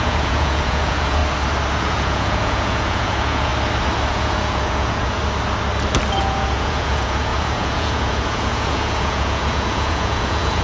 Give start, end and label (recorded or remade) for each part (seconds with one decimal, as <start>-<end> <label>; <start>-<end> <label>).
0.0-1.2 remade; 1.2-1.8 recorded; 1.8-3.5 remade; 3.5-4.1 recorded; 4.1-5.2 remade; 5.2-6.2 recorded; 6.2-10.6 remade